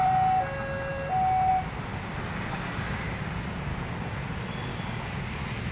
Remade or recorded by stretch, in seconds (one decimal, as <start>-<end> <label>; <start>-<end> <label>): 0.0-3.7 recorded; 3.7-4.2 remade; 4.2-4.7 recorded; 4.7-5.2 remade; 5.2-5.7 recorded